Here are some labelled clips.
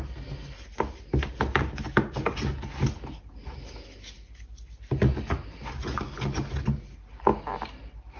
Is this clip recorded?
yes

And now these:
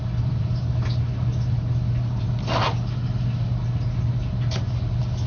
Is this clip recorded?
yes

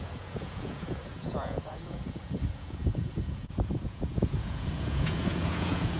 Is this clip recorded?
no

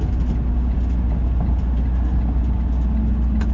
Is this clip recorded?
yes